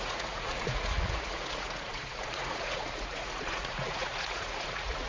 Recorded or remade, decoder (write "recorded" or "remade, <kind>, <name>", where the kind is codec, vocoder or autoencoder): remade, vocoder, Vocos